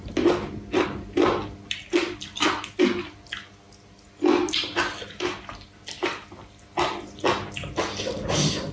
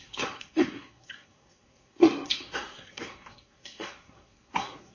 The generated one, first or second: second